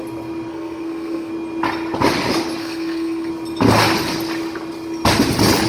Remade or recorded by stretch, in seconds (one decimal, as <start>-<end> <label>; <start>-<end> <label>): 0.0-0.5 recorded; 0.5-1.3 remade; 1.3-2.6 recorded; 2.6-3.3 remade; 3.3-5.7 recorded